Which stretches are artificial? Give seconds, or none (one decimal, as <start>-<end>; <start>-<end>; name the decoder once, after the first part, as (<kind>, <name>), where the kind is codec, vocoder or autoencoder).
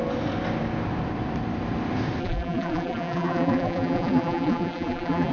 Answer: 2.2-5.3 (vocoder, BigVGAN v2)